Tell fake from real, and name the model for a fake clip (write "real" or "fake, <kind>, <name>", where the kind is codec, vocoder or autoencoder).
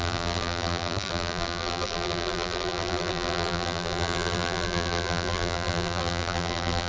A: fake, vocoder, BigVGAN v2